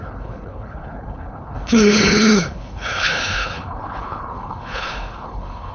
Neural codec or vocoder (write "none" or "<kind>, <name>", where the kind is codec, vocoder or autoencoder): codec, HILCodec